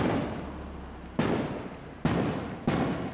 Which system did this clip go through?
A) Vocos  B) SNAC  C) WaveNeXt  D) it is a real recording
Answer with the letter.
D